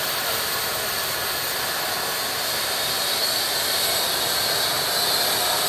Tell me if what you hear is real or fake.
real